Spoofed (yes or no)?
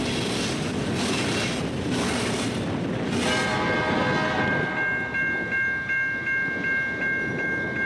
no